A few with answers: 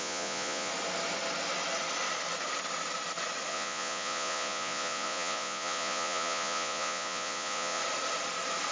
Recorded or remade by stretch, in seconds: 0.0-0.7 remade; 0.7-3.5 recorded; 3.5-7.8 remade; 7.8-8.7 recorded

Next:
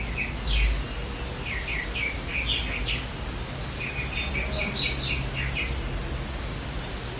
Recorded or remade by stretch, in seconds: 0.0-7.2 recorded